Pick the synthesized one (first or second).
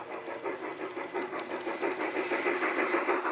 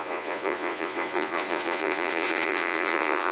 second